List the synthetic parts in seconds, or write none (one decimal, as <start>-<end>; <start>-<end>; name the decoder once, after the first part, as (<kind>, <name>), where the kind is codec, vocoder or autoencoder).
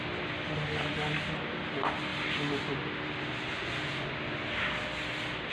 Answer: none